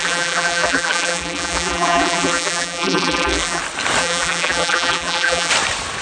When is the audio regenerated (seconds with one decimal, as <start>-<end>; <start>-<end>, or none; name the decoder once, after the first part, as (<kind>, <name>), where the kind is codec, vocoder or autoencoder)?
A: 0.0-3.6 (vocoder, BigVGAN v2); 4.0-5.5